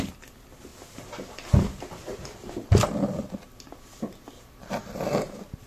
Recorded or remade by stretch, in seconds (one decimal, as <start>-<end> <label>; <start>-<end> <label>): 0.0-5.7 recorded